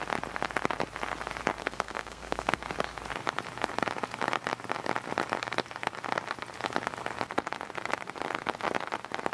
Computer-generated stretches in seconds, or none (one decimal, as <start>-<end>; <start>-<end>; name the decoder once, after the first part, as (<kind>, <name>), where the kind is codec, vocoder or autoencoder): 1.6-2.6 (codec, SNAC)